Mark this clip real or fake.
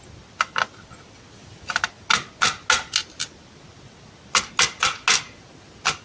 real